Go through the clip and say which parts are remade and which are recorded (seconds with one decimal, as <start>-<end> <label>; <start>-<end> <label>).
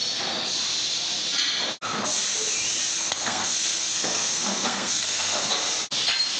0.0-2.9 recorded; 2.9-5.5 remade; 5.5-6.4 recorded